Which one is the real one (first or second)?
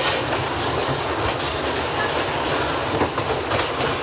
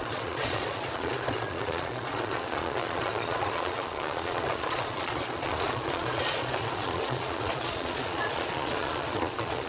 first